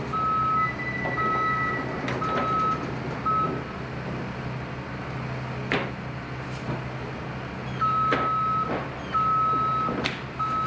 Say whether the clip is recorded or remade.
recorded